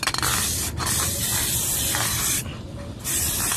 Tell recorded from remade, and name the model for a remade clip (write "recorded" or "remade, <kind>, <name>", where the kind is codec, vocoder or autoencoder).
remade, vocoder, BigVGAN v2